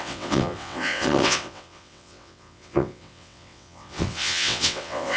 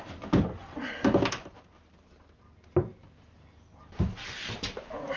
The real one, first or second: second